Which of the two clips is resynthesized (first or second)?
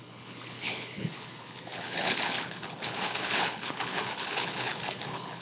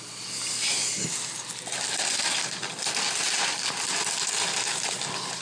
first